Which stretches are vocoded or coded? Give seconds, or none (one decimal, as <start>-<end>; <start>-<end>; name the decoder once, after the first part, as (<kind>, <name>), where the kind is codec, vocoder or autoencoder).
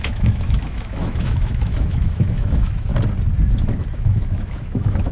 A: 0.0-2.9 (autoencoder, DAC-VAE); 3.9-5.1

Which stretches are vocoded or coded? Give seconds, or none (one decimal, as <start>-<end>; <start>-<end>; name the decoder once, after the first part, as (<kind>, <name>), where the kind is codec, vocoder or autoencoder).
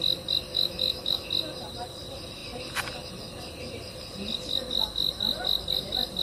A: 0.5-1.3 (autoencoder, DAC-VAE)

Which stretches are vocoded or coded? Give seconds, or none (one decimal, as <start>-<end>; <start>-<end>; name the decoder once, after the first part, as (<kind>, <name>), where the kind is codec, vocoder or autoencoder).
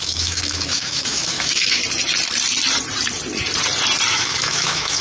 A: 0.0-1.8 (autoencoder, DAC-VAE); 4.1-5.0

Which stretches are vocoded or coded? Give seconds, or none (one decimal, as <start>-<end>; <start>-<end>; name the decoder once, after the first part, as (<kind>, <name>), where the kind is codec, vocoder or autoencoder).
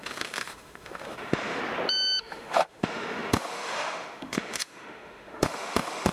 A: 0.0-1.6 (autoencoder, DAC-VAE); 2.2-6.1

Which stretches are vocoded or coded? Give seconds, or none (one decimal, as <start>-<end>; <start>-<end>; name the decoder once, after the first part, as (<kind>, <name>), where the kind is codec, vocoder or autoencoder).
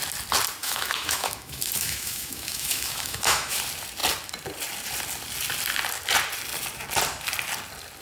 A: 0.6-3.6 (autoencoder, DAC-VAE)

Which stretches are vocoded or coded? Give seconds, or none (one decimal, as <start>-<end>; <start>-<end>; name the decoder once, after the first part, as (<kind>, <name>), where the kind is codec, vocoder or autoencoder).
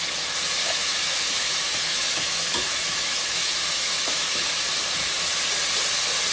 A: 0.6-4.4 (autoencoder, DAC-VAE)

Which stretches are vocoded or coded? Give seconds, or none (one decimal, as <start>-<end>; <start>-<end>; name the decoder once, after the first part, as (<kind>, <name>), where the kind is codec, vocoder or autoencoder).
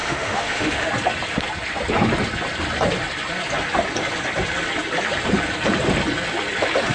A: 0.0-0.9 (autoencoder, DAC-VAE)